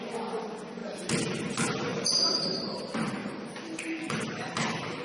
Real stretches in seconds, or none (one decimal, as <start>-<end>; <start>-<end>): 0.0-1.9; 2.7-3.2